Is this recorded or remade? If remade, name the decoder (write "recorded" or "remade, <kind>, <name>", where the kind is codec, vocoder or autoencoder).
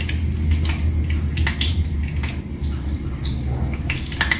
recorded